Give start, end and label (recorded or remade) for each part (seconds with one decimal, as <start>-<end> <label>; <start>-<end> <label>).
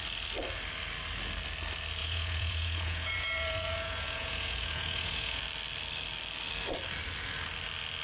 0.0-2.0 recorded; 2.0-5.4 remade; 5.4-8.0 recorded